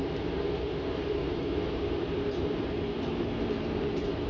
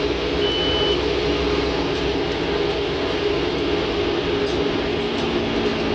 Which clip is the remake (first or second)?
first